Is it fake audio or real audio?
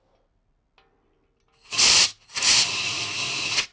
real